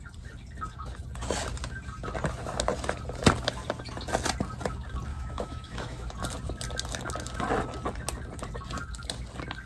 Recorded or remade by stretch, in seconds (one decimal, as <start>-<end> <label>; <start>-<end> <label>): 0.0-5.1 recorded; 5.1-6.1 remade; 6.1-9.7 recorded